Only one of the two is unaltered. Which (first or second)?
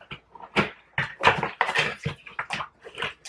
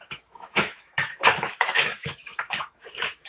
first